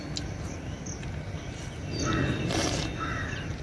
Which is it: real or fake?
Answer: real